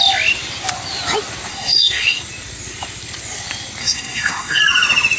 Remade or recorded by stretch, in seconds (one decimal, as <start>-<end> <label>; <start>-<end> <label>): 0.0-1.5 recorded; 1.5-2.2 remade; 2.2-3.8 recorded; 3.8-4.6 remade; 4.6-5.2 recorded